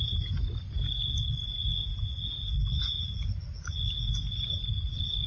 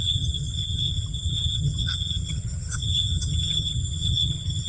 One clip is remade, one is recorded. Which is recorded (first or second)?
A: first